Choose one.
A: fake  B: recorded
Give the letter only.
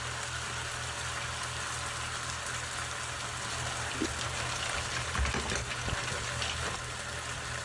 B